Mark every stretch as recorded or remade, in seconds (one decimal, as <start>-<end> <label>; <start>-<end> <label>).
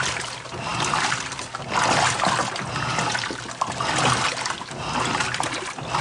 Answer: 0.0-6.0 recorded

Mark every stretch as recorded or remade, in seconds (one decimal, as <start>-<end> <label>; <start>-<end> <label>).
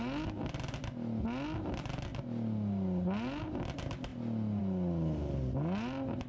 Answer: 0.0-6.3 recorded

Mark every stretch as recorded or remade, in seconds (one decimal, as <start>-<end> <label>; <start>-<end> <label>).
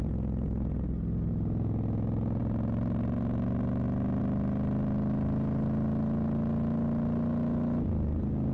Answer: 0.0-8.5 recorded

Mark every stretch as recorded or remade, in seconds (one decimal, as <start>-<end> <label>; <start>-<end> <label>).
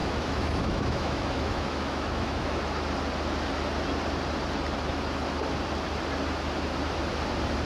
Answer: 0.0-2.6 remade; 2.6-7.7 recorded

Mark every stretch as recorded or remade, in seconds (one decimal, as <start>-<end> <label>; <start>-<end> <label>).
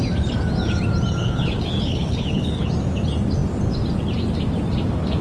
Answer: 0.0-1.2 recorded; 1.2-2.7 remade; 2.7-5.2 recorded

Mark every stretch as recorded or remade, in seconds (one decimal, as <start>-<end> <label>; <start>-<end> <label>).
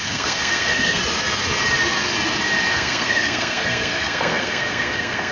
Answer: 0.0-1.0 remade; 1.0-2.7 recorded; 2.7-5.3 remade